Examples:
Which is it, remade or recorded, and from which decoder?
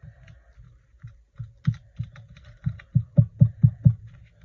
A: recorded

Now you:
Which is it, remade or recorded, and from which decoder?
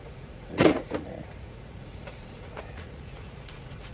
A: remade, vocoder, Vocos